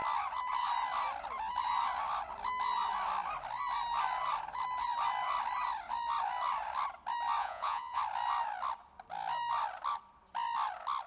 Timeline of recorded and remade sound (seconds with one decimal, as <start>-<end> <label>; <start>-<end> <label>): 0.0-7.4 recorded; 7.4-8.0 remade; 8.0-11.1 recorded